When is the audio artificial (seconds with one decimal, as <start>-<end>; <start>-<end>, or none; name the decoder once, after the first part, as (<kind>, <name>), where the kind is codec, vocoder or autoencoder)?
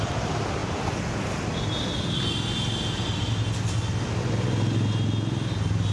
none